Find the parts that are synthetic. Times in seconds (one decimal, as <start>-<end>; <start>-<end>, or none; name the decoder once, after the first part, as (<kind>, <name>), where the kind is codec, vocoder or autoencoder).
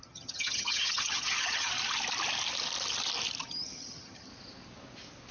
0.0-1.7 (vocoder, HiFi-GAN); 3.4-4.3